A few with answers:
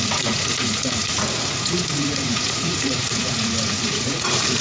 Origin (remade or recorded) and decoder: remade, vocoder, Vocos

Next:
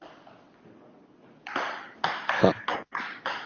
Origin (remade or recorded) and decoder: recorded